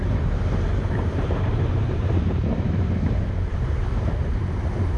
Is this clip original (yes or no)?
no